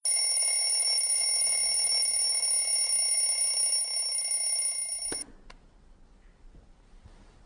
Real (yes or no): yes